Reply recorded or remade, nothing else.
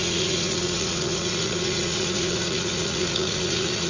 remade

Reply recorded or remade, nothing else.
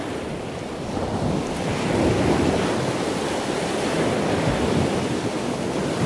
recorded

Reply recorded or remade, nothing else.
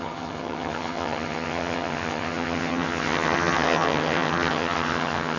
remade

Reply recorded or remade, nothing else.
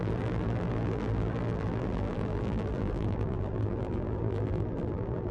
remade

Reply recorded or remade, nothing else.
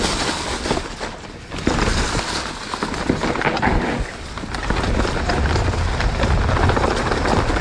recorded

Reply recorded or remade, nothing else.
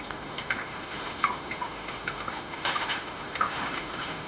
remade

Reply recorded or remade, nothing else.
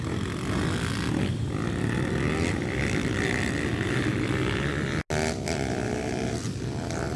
recorded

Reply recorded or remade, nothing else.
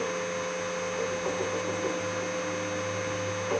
recorded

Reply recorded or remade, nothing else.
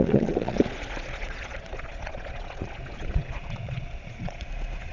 remade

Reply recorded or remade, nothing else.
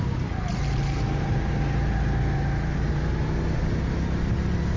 recorded